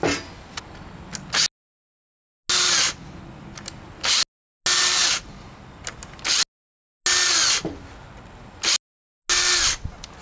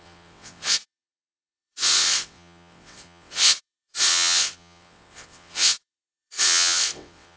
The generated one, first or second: second